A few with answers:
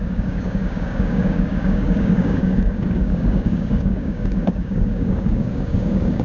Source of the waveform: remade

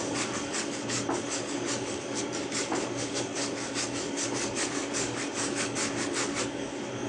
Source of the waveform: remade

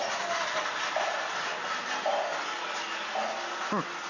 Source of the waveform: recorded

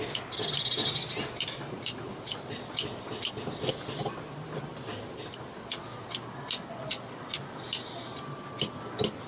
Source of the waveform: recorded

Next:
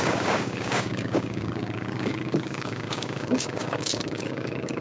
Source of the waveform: remade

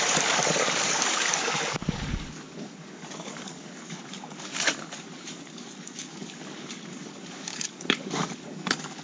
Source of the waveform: remade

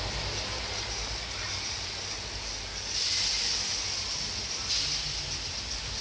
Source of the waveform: recorded